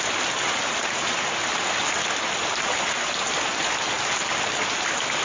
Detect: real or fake real